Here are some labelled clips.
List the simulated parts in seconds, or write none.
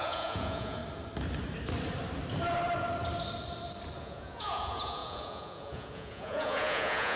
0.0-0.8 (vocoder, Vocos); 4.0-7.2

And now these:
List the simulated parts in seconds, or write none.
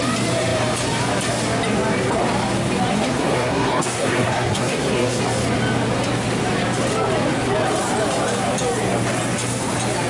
2.9-5.2 (codec, SNAC)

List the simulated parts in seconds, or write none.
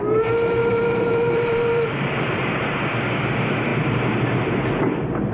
0.6-2.7 (vocoder, BigVGAN v2)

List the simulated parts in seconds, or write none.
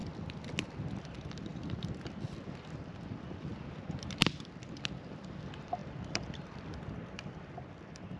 1.0-3.5 (vocoder, BigVGAN v2); 5.1-8.2